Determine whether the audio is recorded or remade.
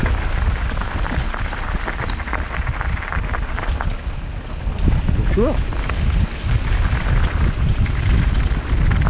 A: recorded